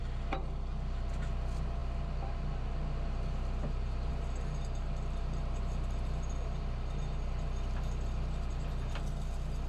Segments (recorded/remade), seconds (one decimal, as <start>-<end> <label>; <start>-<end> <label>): 0.0-9.7 recorded